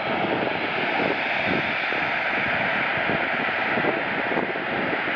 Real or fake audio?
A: real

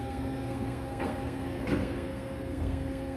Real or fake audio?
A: fake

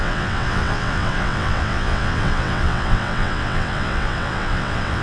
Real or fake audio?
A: fake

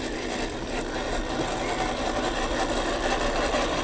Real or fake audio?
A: real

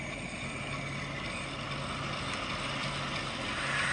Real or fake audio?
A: real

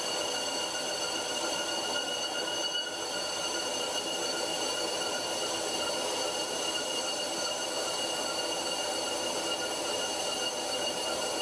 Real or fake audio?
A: real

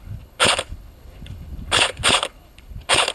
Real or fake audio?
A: fake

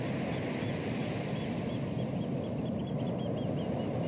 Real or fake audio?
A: real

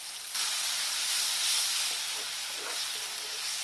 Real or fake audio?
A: real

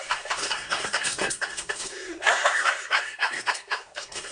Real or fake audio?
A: fake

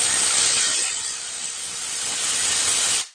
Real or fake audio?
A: real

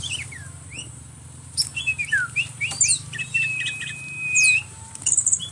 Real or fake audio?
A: fake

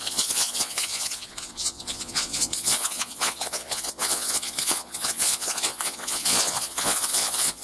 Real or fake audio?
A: fake